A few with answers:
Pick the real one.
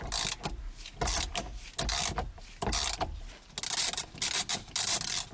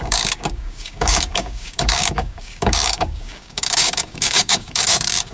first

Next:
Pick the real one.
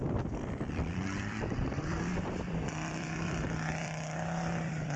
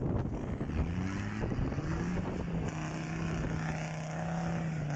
second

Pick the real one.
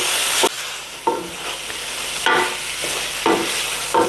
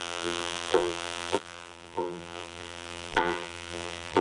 first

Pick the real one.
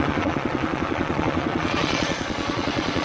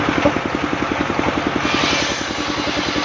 second